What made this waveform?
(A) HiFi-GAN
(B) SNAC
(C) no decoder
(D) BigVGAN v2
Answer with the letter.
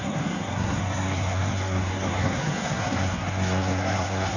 B